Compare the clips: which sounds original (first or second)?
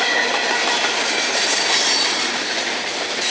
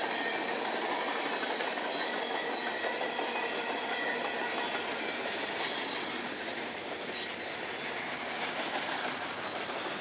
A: second